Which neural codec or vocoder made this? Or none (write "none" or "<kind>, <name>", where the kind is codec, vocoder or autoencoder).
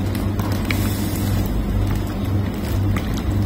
none